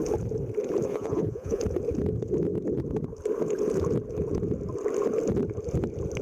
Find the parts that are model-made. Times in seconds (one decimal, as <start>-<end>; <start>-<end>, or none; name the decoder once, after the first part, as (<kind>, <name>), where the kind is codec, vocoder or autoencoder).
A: 0.9-1.6 (vocoder, Vocos)

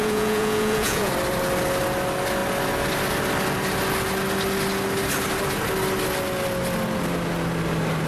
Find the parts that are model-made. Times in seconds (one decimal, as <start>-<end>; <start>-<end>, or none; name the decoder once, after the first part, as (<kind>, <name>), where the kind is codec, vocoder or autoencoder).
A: 0.0-1.1 (vocoder, Vocos)

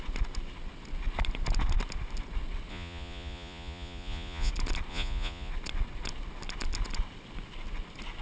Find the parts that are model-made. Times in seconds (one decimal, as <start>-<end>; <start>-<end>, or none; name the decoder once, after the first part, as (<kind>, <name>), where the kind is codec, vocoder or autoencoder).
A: 2.7-4.5 (vocoder, Vocos); 4.9-5.5

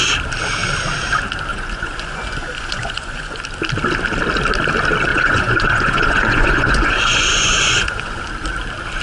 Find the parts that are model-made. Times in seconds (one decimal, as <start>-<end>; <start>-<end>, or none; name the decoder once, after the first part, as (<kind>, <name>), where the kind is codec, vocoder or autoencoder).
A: 1.5-3.4 (vocoder, Vocos); 5.1-8.2

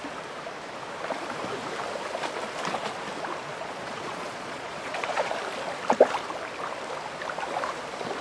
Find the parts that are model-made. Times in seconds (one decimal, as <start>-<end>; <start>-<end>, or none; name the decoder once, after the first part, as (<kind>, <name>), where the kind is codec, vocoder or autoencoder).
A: 3.5-5.3 (vocoder, Vocos)

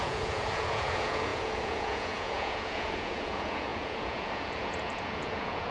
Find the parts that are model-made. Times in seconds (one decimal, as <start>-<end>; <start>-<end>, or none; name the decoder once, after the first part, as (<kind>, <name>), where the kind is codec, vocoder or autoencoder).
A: 0.0-5.7 (vocoder, Vocos)